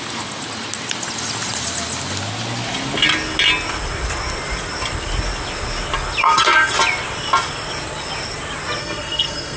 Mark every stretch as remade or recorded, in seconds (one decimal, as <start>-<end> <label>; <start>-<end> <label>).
0.0-6.2 recorded; 6.2-6.7 remade; 6.7-8.8 recorded; 8.8-9.6 remade